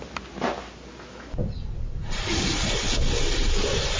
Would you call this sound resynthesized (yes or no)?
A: no